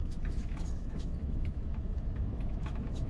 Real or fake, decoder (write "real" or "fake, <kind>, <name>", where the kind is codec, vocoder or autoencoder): fake, autoencoder, DAC-VAE